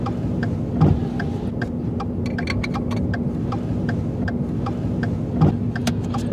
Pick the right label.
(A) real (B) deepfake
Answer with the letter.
A